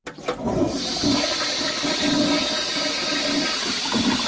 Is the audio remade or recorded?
recorded